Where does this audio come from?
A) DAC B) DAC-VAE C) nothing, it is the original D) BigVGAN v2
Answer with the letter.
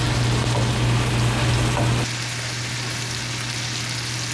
C